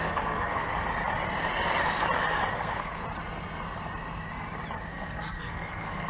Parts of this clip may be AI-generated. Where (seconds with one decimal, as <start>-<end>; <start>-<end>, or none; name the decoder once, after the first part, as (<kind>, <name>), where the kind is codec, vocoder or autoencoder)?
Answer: 0.0-0.7 (codec, SNAC); 2.5-3.0; 4.9-6.1